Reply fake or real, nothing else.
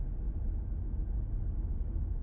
real